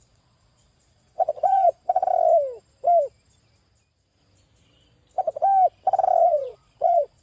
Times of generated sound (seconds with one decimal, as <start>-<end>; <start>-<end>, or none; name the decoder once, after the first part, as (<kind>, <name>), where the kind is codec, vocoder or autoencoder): 0.0-2.0 (vocoder, Vocos); 6.2-7.2